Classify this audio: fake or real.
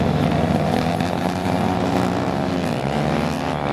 real